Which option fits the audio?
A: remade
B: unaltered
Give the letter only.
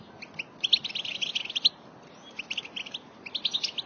B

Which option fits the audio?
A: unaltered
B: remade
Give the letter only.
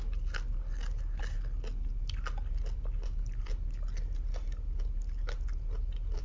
A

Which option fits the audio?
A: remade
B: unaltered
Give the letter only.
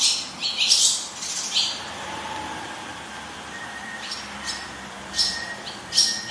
B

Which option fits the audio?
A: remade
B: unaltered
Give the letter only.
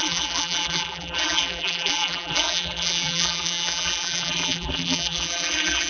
A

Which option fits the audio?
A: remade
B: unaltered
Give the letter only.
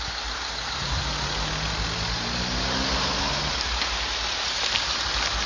B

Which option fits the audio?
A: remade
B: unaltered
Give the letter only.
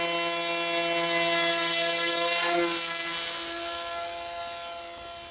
B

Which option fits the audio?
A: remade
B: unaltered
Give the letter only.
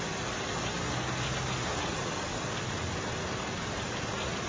B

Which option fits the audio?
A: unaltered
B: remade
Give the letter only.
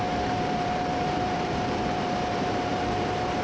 B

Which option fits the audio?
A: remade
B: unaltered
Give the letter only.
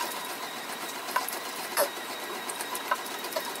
A